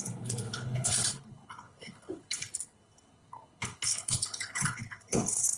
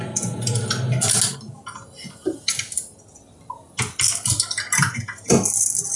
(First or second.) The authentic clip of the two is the second